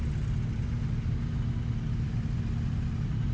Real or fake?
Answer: real